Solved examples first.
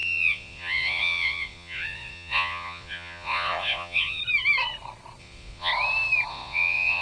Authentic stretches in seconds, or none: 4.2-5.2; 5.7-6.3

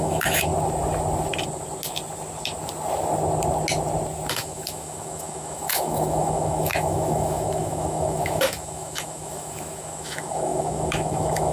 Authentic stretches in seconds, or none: 0.5-4.3

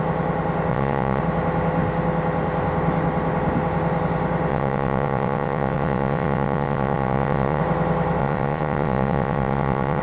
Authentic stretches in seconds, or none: 0.0-0.7; 1.2-4.5; 7.6-8.2

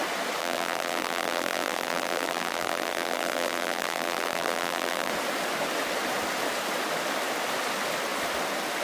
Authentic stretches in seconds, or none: 0.0-0.4; 5.1-8.8